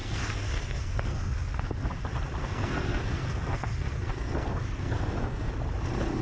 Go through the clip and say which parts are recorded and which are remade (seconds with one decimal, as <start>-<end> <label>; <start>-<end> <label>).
0.0-2.0 remade; 2.0-2.4 recorded; 2.4-5.5 remade; 5.5-6.2 recorded